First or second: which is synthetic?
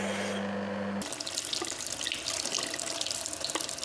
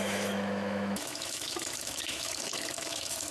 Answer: second